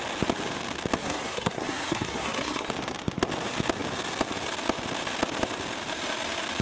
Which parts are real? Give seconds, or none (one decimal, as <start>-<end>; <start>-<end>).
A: 0.0-1.0; 2.7-6.6